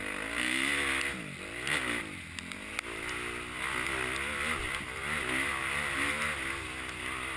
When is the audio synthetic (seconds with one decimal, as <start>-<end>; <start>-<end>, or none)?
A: none

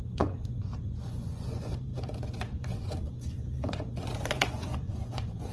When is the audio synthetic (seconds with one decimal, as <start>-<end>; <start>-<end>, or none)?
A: 0.0-5.5

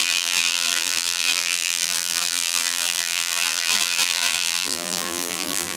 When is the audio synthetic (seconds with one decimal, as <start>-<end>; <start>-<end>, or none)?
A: 0.0-5.8

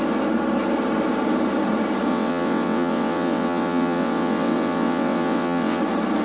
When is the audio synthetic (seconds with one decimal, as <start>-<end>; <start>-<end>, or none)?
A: 2.1-5.8

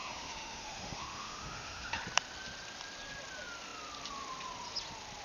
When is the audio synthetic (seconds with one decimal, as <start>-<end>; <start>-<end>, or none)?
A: 0.0-2.0